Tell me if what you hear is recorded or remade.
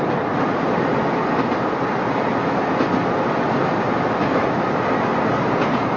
recorded